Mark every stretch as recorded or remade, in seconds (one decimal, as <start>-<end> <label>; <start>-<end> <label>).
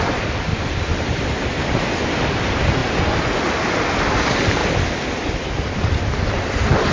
0.0-2.8 remade; 2.8-3.5 recorded; 3.5-4.6 remade; 4.6-6.3 recorded; 6.3-6.9 remade